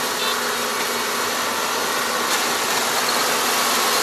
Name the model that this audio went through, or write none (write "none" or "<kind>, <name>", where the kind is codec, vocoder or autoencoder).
none